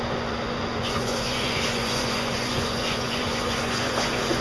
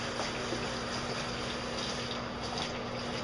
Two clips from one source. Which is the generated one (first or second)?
first